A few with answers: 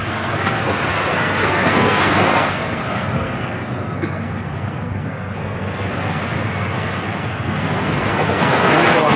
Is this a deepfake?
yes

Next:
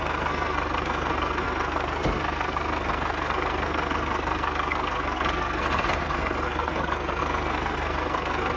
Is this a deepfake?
yes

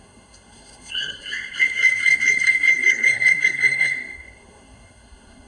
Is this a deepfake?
yes